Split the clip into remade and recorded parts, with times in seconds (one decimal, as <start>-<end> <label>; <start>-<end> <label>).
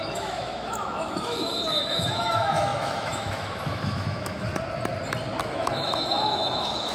0.0-4.5 remade; 4.5-5.4 recorded; 5.4-6.9 remade